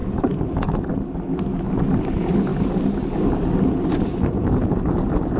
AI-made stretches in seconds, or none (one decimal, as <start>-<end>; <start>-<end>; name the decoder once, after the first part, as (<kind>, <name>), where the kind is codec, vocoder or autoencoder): 0.0-0.9 (vocoder, BigVGAN v2)